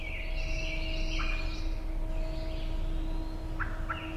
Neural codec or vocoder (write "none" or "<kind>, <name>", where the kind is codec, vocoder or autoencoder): none